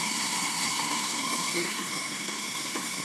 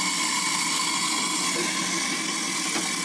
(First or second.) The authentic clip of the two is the second